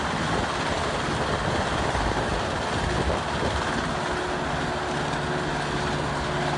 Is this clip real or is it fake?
real